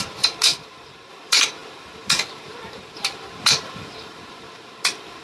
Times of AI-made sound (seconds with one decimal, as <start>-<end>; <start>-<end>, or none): 0.0-5.2